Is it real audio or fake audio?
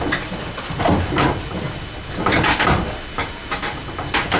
real